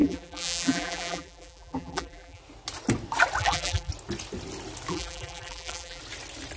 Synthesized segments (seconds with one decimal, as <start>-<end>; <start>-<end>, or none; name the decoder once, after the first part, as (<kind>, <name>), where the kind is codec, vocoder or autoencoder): 0.0-2.4 (vocoder, BigVGAN v2); 3.4-3.9; 4.9-6.0